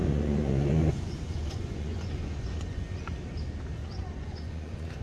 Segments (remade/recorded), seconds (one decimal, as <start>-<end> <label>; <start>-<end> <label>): 0.0-3.0 remade; 3.0-3.8 recorded; 3.8-5.0 remade